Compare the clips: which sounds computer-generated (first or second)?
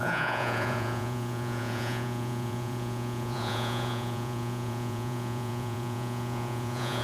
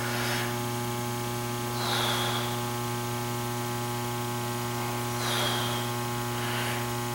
first